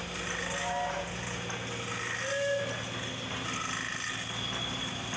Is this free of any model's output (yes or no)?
yes